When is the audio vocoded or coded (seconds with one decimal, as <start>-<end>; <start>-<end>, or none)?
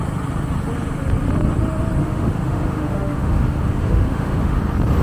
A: 2.0-4.6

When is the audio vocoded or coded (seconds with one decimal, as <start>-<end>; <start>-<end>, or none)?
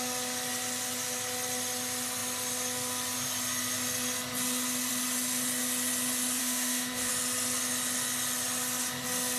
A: 6.4-7.1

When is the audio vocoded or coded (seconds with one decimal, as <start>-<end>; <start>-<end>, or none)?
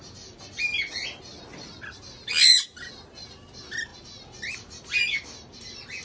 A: none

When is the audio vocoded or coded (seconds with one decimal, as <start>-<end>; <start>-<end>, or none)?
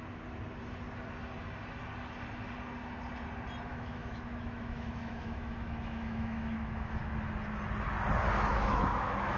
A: 3.7-7.0; 8.5-9.4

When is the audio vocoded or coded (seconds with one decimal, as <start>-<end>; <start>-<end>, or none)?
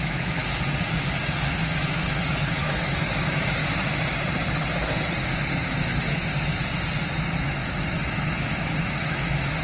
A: 0.0-0.4; 1.4-3.6; 5.6-6.3; 7.4-9.6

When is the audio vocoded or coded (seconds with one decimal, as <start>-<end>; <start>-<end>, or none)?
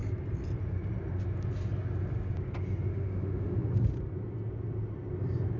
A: 2.9-3.7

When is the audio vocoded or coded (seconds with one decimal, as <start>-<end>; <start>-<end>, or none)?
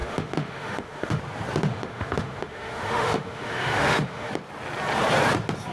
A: 0.0-1.2; 1.7-4.3